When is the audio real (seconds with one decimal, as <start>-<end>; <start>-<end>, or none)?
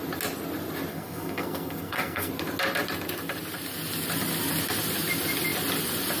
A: 0.0-0.9; 2.3-6.2